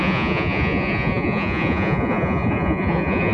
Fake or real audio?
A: fake